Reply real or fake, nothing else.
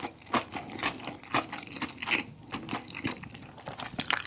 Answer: real